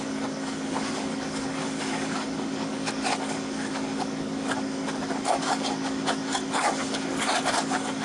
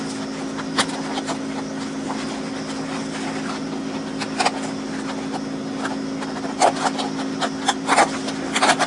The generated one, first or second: first